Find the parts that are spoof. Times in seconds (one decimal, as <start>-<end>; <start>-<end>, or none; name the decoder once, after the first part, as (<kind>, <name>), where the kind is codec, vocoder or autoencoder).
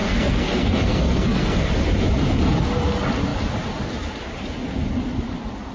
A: 0.0-1.7 (codec, SNAC)